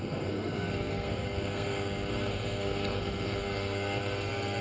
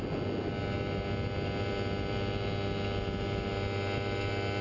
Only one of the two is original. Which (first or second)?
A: second